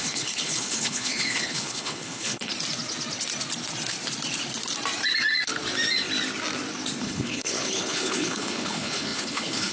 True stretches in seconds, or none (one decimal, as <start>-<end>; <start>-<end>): 2.5-7.0